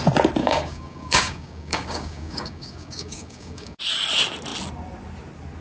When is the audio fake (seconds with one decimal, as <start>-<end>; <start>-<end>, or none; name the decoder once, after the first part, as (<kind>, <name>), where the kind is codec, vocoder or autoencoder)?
0.4-3.8 (codec, DAC)